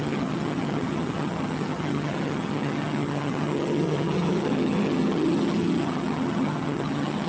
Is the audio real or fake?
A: fake